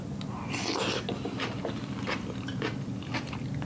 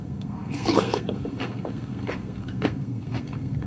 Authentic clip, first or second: first